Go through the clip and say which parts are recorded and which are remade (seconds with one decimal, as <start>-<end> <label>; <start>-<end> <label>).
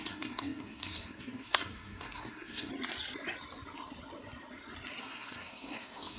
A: 0.0-2.7 remade; 2.7-5.0 recorded; 5.0-6.2 remade